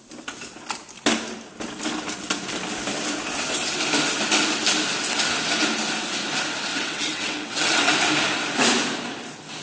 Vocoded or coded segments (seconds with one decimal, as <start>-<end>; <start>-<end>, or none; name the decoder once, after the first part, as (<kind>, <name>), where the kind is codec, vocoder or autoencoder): 6.7-7.9 (vocoder, WaveNeXt)